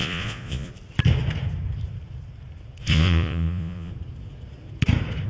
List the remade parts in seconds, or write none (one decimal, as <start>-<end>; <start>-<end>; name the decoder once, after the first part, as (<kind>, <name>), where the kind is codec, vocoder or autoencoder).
0.0-0.7 (vocoder, Vocos); 2.8-3.9